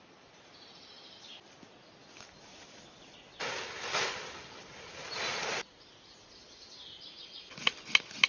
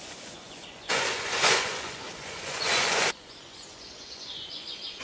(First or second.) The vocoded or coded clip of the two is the second